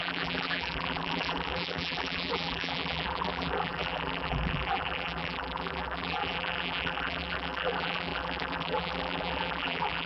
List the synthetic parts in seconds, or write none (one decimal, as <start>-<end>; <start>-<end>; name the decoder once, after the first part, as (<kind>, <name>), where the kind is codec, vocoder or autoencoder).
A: 0.0-10.1 (vocoder, BigVGAN v2)